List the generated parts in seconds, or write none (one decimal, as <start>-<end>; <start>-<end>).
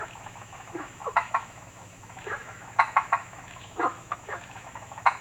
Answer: 0.0-5.2